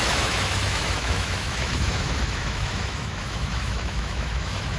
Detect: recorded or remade remade